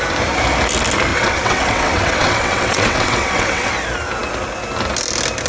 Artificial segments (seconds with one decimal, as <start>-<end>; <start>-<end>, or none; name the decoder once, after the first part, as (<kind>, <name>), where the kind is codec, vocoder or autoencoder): 1.1-3.7 (vocoder, WaveNeXt)